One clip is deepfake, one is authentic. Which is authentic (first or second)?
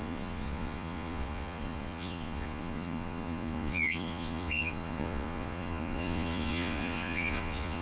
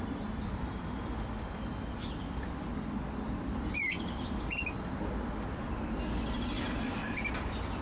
second